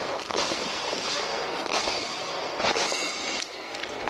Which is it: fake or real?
fake